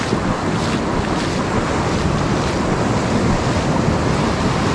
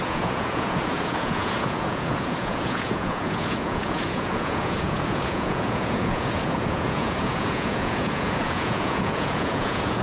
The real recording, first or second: first